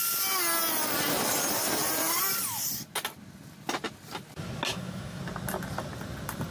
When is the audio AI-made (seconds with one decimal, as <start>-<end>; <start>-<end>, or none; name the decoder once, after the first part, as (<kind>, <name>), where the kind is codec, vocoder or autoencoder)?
4.7-5.2 (autoencoder, DAC-VAE)